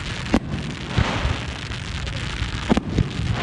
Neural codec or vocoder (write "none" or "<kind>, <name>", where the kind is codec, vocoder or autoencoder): none